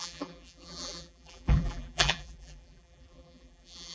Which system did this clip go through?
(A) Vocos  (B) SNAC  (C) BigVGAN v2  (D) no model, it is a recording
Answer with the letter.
C